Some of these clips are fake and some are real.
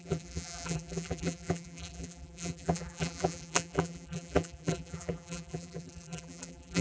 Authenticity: fake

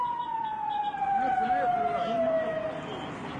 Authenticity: real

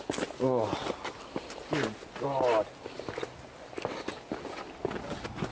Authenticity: real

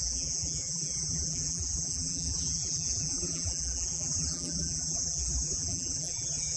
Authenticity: fake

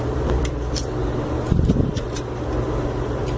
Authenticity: fake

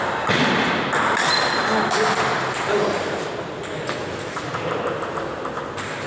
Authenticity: real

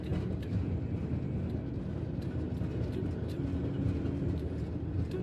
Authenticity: real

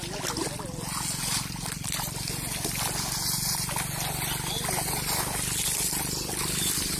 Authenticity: real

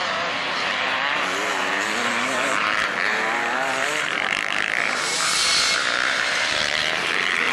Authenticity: fake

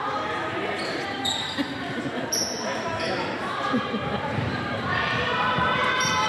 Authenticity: fake